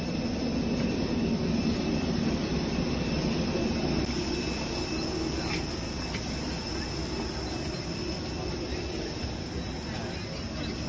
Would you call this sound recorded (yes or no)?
yes